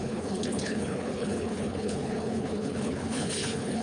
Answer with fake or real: fake